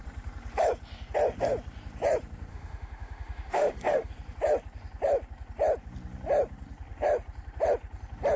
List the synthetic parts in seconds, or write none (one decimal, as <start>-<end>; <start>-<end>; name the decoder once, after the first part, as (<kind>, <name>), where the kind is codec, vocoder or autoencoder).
2.5-4.1 (autoencoder, DAC-VAE)